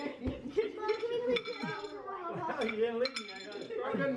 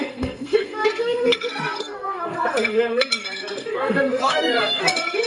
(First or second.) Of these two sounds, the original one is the first